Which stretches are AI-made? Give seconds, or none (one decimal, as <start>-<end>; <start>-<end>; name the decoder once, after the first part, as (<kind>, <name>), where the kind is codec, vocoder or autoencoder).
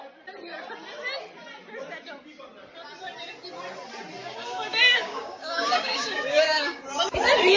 4.2-6.8 (codec, DAC)